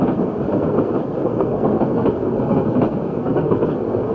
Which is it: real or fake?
fake